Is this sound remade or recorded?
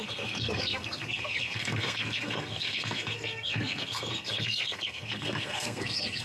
remade